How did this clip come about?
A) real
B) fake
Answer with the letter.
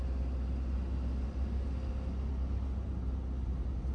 A